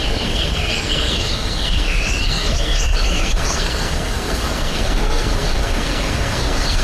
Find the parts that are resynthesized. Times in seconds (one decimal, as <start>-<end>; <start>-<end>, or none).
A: 0.0-6.8